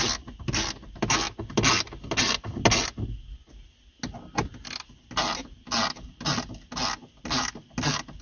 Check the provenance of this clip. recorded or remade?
recorded